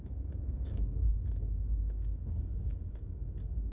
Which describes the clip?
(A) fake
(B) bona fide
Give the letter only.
A